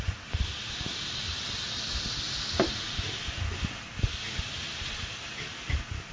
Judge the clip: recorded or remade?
recorded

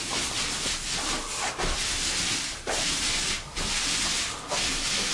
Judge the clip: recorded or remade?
recorded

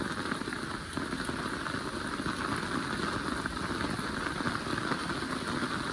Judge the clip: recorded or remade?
recorded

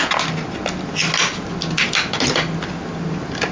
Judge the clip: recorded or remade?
recorded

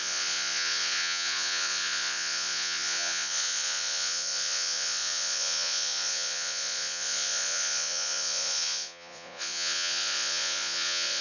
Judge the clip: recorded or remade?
remade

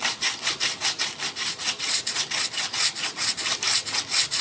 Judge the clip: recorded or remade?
recorded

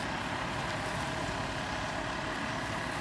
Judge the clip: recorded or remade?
recorded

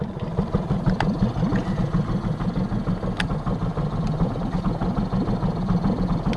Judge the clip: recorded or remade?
recorded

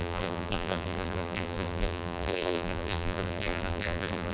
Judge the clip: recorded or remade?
remade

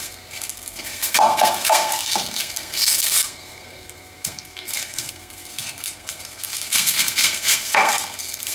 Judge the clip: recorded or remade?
remade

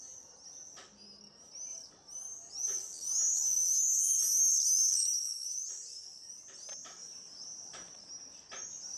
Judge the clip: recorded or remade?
recorded